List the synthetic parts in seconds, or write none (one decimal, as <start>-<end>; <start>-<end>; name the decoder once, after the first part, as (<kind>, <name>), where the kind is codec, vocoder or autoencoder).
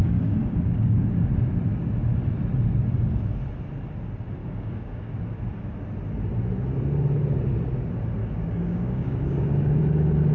0.0-1.0 (codec, DAC); 4.4-5.1; 8.2-9.8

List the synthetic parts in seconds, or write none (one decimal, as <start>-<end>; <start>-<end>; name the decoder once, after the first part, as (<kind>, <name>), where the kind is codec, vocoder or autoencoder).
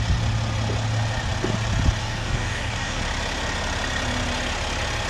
2.0-3.0 (codec, DAC)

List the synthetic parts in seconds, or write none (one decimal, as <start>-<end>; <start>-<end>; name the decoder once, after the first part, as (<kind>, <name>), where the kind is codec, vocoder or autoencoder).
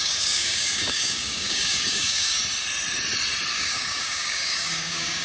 0.0-2.4 (codec, DAC); 3.5-5.2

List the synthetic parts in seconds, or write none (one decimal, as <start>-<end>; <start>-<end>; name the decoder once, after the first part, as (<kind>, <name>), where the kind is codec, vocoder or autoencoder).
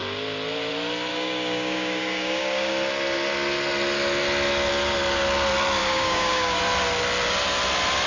1.1-2.7 (codec, DAC); 5.8-6.6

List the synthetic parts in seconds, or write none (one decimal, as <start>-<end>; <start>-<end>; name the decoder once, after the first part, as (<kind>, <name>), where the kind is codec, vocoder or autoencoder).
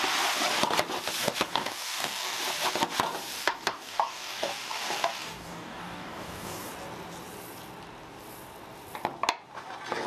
1.2-2.4 (codec, DAC); 3.4-6.7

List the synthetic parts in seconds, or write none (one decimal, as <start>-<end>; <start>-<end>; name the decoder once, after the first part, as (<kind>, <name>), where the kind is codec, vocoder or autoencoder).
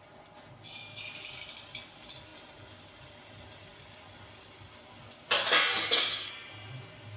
5.7-6.3 (codec, DAC)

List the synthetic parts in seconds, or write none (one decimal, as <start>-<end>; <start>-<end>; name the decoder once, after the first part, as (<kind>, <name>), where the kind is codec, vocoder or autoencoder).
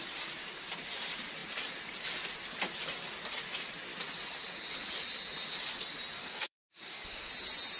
6.2-7.3 (codec, DAC)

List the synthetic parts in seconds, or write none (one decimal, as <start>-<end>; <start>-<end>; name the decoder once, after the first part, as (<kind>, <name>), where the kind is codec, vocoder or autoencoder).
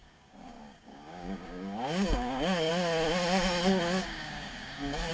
0.0-2.7 (codec, DAC); 4.0-5.1